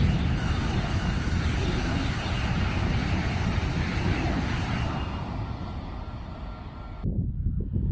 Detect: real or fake real